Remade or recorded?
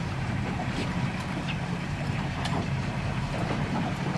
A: remade